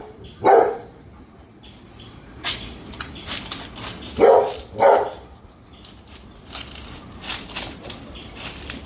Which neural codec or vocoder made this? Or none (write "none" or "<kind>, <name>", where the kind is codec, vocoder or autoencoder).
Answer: none